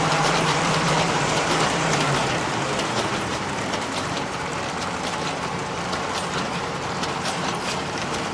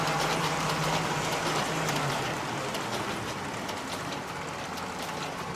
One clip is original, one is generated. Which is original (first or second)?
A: second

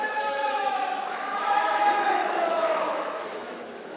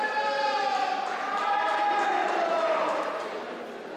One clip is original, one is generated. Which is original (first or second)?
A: second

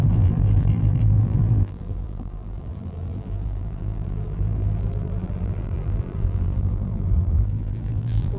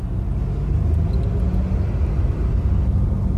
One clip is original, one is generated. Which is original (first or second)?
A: second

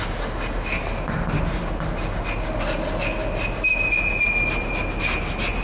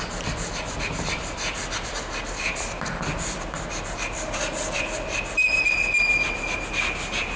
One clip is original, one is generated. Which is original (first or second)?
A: first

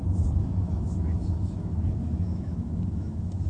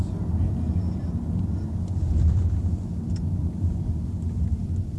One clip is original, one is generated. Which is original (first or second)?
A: second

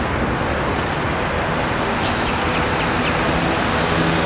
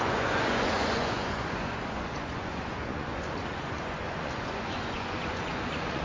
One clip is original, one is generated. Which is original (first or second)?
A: first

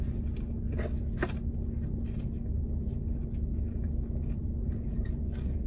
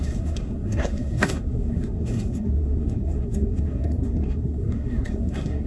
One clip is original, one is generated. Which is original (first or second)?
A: first